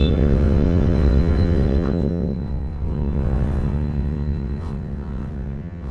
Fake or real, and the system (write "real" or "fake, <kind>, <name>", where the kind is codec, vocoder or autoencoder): fake, vocoder, WaveNeXt